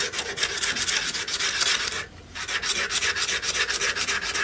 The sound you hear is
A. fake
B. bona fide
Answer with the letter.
B